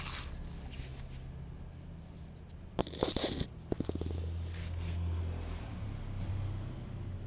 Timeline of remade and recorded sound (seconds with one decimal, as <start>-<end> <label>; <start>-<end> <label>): 0.0-4.6 recorded; 4.6-5.2 remade; 5.2-7.3 recorded